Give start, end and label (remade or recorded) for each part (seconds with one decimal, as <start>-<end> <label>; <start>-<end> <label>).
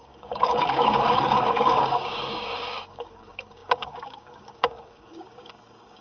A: 0.0-6.0 remade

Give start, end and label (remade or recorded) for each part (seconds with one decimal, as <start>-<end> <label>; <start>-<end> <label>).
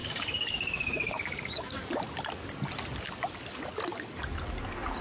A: 0.0-2.0 remade; 2.0-5.0 recorded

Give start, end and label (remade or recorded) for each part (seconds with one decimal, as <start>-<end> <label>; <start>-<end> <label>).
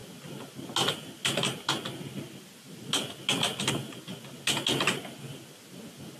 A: 0.0-6.2 recorded